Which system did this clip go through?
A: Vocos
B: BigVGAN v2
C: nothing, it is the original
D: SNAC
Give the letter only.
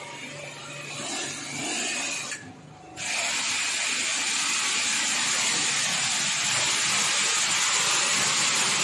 C